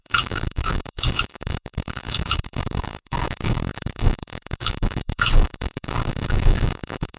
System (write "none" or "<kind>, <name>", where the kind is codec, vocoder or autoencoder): codec, DAC